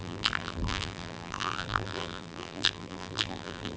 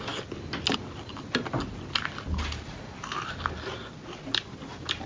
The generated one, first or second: first